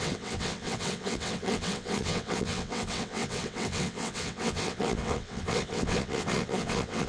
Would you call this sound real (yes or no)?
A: no